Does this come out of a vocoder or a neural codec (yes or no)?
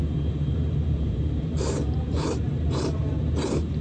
yes